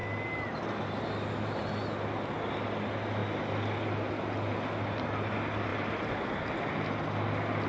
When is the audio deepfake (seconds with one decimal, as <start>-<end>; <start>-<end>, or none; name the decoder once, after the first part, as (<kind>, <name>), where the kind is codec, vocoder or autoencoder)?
none